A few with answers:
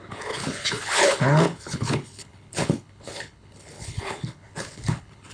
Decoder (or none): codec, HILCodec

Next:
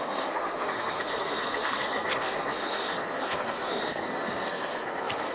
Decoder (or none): codec, SNAC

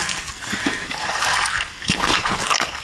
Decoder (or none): codec, SNAC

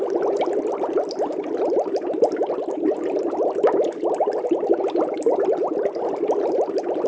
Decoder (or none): none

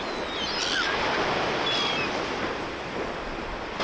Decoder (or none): none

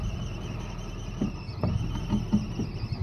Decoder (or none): none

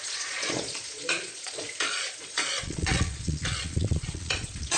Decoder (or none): vocoder, Vocos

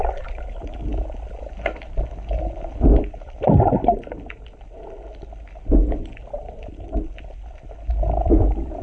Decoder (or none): none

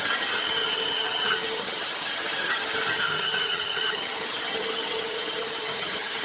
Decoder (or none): vocoder, HiFi-GAN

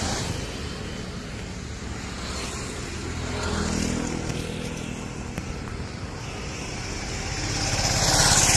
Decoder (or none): none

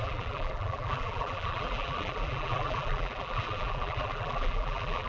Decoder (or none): vocoder, BigVGAN v2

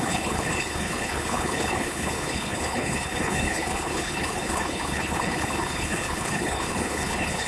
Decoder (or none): codec, HILCodec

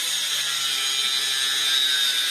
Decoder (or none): none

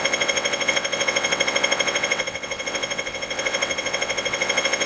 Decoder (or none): vocoder, WaveNeXt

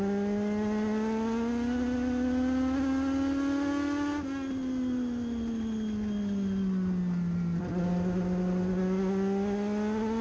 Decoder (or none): none